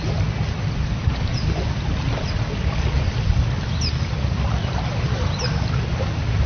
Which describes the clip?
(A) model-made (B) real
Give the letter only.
B